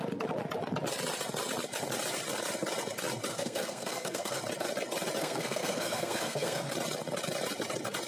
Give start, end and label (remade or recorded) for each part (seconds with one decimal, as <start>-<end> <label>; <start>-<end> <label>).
0.0-3.3 recorded; 3.3-4.4 remade; 4.4-5.2 recorded; 5.2-6.7 remade; 6.7-8.1 recorded

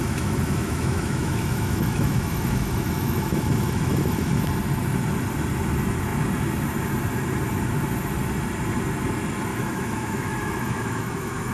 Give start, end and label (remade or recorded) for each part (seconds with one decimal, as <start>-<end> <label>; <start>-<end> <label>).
0.0-4.3 remade; 4.3-9.5 recorded; 9.5-11.5 remade

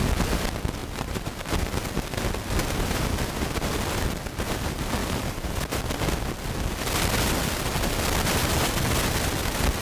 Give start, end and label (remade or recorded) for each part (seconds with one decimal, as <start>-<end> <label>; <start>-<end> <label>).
0.0-0.8 recorded; 0.8-1.5 remade; 1.5-5.0 recorded; 5.0-5.8 remade; 5.8-9.8 recorded

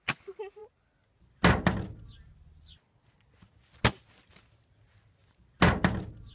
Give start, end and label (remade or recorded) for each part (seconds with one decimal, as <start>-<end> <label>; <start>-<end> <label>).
0.0-6.3 recorded

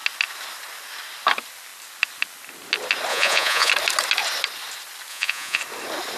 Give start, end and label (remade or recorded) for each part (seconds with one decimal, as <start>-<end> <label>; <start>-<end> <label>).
0.0-3.1 recorded; 3.1-3.7 remade; 3.7-5.1 recorded; 5.1-5.6 remade; 5.6-6.2 recorded